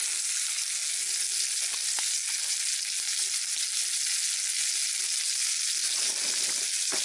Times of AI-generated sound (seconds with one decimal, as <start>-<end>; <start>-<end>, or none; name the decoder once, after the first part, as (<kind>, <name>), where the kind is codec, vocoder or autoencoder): none